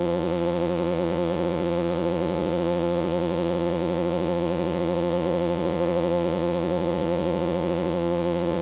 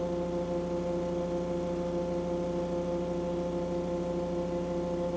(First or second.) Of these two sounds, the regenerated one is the first